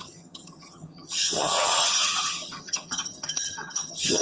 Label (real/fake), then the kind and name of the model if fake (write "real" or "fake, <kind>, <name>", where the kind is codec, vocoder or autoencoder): fake, vocoder, HiFi-GAN